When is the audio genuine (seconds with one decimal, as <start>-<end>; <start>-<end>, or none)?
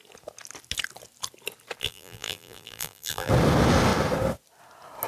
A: 0.0-1.8; 3.3-5.1